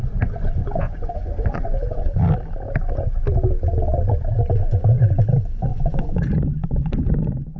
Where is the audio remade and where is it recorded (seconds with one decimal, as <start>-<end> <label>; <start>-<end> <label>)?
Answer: 0.0-0.6 recorded; 0.6-2.1 remade; 2.1-5.7 recorded; 5.7-7.6 remade